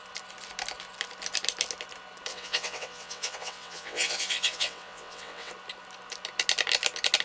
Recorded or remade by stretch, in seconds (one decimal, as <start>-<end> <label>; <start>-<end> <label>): 0.0-2.3 recorded; 2.3-5.5 remade; 5.5-7.2 recorded